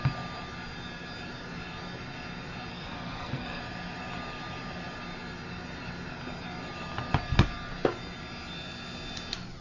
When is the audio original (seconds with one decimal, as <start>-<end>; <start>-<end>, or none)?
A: 0.0-2.7; 3.6-9.6